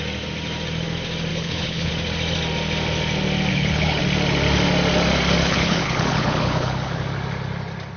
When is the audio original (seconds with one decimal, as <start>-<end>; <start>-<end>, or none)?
0.0-1.3; 1.9-3.5; 4.0-5.4; 7.0-8.0